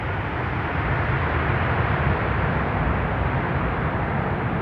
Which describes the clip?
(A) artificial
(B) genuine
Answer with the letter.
B